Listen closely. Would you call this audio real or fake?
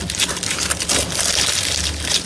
real